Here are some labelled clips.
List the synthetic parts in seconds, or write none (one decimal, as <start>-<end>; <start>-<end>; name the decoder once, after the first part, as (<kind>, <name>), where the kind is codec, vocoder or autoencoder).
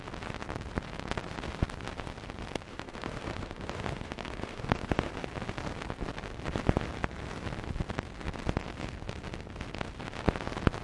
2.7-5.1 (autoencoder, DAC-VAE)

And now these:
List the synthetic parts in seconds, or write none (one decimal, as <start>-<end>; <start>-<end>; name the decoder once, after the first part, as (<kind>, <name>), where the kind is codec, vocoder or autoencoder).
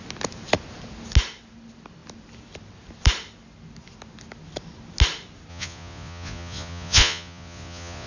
5.5-8.1 (vocoder, Vocos)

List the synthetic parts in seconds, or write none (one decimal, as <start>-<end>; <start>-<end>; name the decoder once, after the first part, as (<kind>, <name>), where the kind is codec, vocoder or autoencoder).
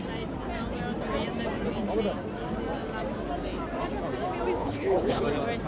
4.6-5.2 (codec, HILCodec)